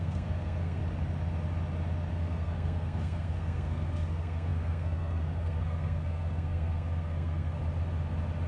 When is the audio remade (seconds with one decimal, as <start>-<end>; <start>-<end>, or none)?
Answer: 0.0-0.8; 2.1-7.6